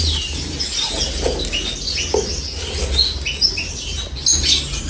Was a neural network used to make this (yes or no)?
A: no